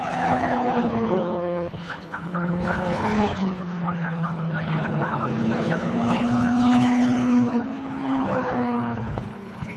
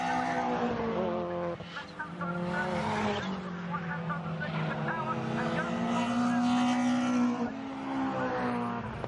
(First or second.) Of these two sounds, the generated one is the first